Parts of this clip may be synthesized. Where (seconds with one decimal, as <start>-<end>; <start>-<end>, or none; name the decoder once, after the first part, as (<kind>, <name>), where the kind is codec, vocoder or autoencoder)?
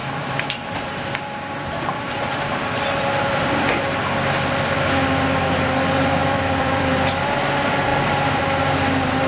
0.0-2.5 (vocoder, BigVGAN v2); 6.2-7.1; 7.9-8.4